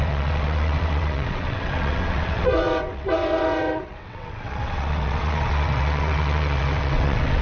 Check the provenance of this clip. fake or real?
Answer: fake